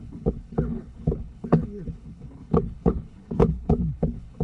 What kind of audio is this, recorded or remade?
remade